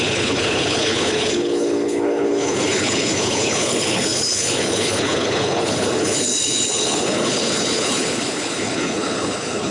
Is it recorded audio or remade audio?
remade